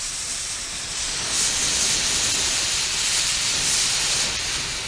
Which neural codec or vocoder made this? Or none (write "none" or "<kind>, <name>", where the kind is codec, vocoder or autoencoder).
vocoder, BigVGAN v2